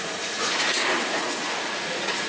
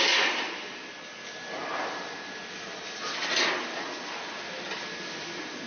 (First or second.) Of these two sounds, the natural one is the second